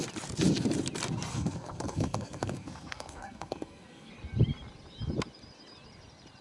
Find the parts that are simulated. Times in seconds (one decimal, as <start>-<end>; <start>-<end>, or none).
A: 1.3-4.1